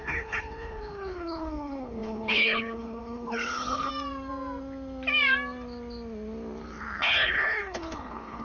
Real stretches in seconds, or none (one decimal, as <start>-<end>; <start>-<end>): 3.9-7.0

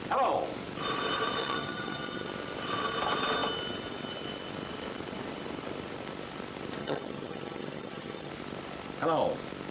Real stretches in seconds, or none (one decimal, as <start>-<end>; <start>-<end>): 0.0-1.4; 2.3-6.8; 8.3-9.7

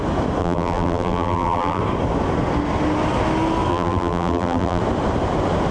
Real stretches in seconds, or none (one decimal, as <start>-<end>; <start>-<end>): 0.0-0.4; 1.8-3.7; 4.8-5.7

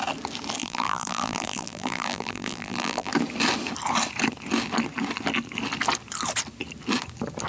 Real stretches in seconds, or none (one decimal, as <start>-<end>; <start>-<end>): 0.0-0.6; 3.1-7.5

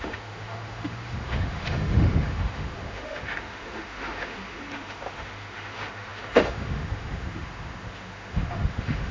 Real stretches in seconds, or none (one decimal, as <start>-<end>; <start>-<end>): none

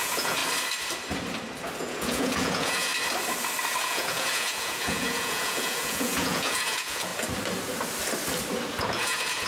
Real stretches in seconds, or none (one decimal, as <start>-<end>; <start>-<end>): 0.4-1.8; 2.9-3.8; 7.1-8.8

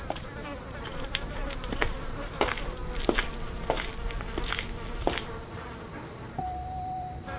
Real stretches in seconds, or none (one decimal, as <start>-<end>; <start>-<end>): 2.8-6.4